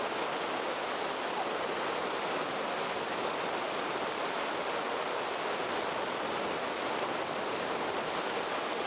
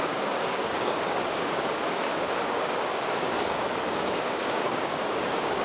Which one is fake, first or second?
second